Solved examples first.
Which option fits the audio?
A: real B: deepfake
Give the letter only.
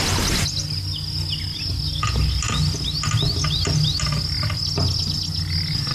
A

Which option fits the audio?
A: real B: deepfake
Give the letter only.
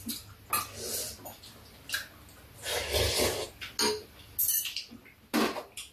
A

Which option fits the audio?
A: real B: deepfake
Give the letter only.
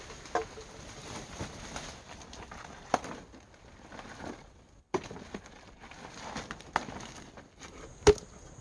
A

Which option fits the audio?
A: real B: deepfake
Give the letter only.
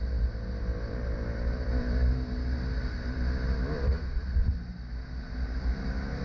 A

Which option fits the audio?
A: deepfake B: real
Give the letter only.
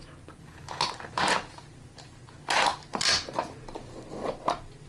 B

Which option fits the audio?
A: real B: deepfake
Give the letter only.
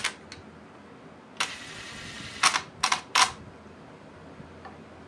A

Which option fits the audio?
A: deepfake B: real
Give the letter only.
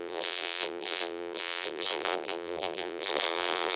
A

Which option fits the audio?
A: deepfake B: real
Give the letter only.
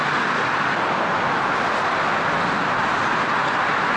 B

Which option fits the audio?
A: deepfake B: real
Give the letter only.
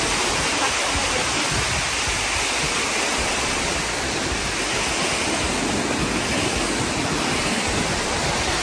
B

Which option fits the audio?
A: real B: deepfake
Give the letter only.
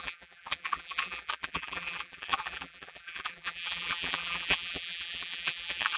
B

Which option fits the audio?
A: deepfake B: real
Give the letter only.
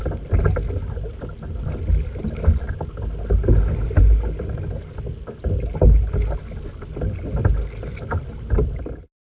B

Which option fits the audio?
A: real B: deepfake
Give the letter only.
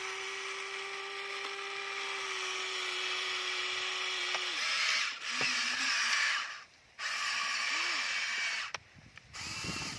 B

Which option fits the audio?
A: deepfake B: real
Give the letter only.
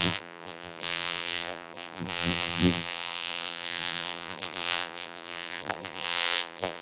A